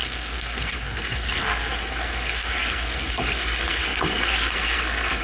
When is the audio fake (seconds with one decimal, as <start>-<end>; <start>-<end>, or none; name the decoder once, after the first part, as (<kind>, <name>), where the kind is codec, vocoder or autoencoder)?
0.0-5.2 (codec, SNAC)